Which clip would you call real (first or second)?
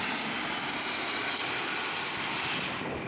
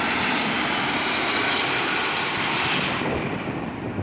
first